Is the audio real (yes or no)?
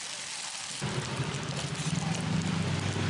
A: yes